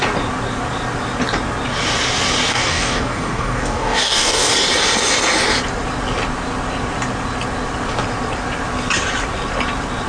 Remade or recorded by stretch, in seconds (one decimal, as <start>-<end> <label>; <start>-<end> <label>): 0.0-2.5 recorded; 2.5-4.5 remade; 4.5-10.1 recorded

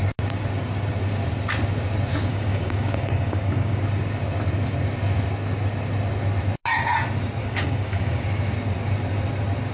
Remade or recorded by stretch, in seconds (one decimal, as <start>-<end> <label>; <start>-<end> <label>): 0.0-2.3 recorded; 2.3-3.8 remade; 3.8-7.4 recorded; 7.4-8.2 remade; 8.2-9.7 recorded